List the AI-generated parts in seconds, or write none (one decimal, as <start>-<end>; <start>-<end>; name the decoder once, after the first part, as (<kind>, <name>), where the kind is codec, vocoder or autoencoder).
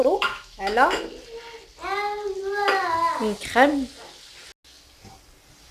0.0-1.0 (autoencoder, DAC-VAE)